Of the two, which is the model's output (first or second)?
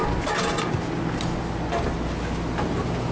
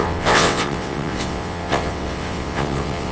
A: second